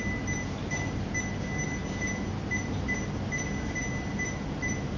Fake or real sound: real